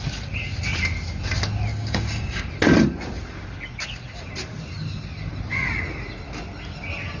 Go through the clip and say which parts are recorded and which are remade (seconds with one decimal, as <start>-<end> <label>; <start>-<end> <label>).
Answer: 0.0-1.7 recorded; 1.7-2.5 remade; 2.5-7.2 recorded